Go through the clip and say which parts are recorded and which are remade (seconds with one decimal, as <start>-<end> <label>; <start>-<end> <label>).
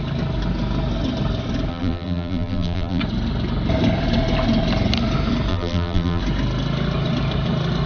0.0-1.7 recorded; 1.7-3.0 remade; 3.0-5.5 recorded; 5.5-6.2 remade; 6.2-7.9 recorded